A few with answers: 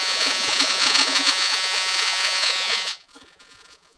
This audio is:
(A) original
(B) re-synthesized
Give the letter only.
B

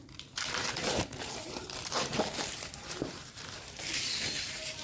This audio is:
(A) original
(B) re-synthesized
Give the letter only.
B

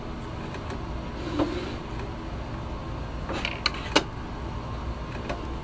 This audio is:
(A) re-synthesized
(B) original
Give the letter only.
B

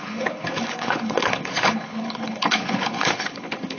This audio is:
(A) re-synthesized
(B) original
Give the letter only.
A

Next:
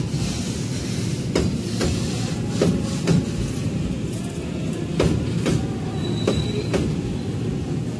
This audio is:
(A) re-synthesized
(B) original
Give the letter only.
B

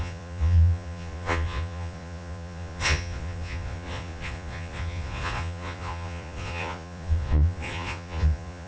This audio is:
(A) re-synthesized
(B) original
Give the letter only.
A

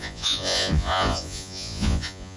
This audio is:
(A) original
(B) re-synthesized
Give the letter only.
B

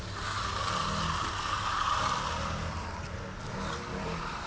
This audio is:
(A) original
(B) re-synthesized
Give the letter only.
A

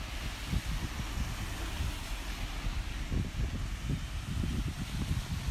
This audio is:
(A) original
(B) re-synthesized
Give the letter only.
A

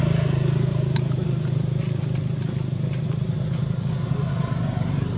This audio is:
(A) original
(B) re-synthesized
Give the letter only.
A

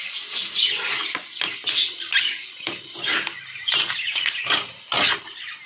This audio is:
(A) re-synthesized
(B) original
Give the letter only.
B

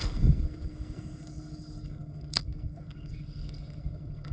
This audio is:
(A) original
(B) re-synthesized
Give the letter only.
B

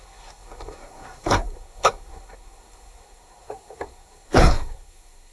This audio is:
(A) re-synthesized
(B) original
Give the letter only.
A